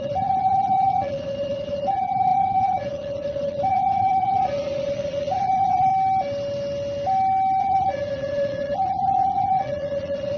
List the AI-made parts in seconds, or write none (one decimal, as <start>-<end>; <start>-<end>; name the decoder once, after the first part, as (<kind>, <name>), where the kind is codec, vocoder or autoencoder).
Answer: 0.0-5.9 (vocoder, Vocos); 7.6-10.4